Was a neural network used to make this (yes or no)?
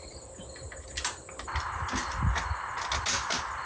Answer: no